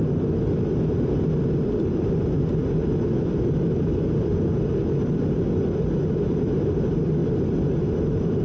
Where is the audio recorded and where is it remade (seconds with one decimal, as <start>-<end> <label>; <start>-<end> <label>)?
0.0-8.4 recorded